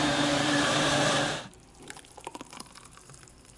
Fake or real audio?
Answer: fake